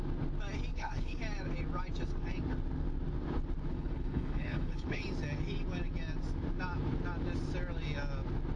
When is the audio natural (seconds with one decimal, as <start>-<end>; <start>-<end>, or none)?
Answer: 0.0-0.7; 1.2-3.7; 5.0-8.6